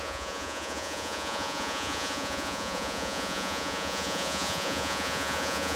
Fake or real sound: fake